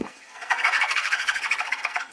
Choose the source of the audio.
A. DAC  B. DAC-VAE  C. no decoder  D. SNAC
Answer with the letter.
D